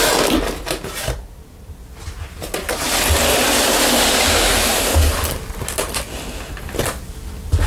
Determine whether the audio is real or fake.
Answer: real